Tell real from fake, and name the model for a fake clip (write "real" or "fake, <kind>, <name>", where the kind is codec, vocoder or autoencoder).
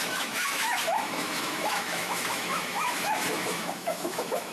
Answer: fake, autoencoder, DAC-VAE